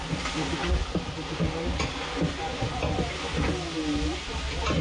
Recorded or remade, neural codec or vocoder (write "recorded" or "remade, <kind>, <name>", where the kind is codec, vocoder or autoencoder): recorded